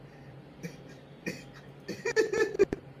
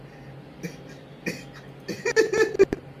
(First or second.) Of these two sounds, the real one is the second